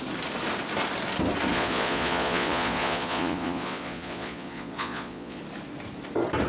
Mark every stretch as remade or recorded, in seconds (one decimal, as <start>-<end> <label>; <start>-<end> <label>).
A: 0.0-1.5 recorded; 1.5-5.4 remade; 5.4-6.5 recorded